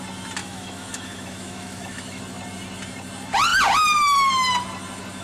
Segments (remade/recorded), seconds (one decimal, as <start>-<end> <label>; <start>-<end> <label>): 0.0-0.4 recorded; 0.4-2.2 remade; 2.2-5.2 recorded